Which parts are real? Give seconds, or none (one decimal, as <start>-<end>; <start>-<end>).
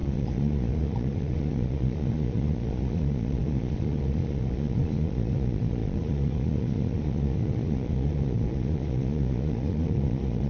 none